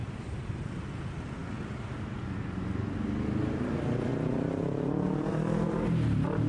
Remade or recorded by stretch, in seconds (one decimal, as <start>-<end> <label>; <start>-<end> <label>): 0.0-0.7 remade; 0.7-6.5 recorded